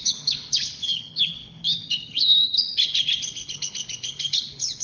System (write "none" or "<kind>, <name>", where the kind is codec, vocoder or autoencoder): codec, HILCodec